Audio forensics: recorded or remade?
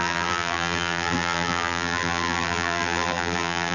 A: remade